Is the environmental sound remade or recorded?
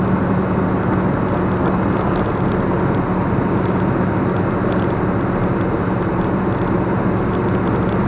recorded